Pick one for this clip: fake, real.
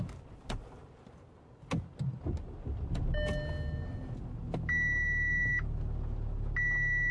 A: real